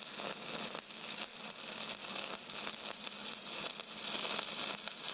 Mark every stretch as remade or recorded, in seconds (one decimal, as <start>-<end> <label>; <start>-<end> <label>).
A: 0.0-5.1 recorded